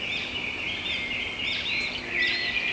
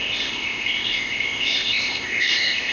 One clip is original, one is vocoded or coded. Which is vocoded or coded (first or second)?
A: second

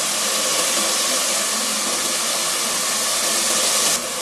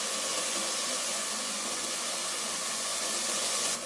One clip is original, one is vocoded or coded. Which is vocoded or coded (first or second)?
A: second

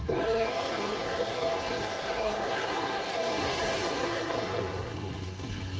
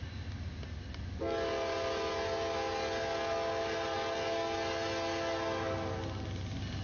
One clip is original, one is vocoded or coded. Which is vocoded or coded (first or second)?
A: first